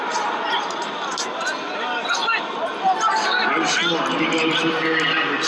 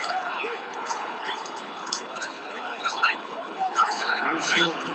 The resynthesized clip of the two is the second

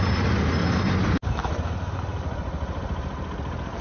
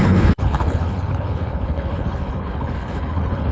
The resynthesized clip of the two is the second